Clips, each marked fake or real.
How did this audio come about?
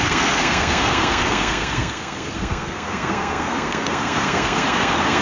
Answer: fake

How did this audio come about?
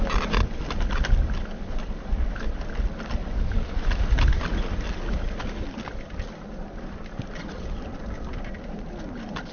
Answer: real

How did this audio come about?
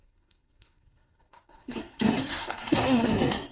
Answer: fake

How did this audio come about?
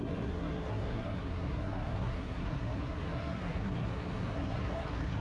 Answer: fake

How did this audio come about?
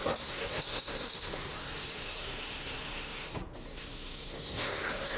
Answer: fake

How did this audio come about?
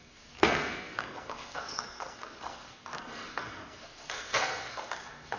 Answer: fake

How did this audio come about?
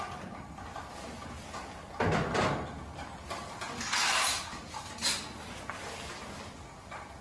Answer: real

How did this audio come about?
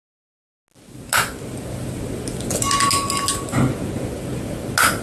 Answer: real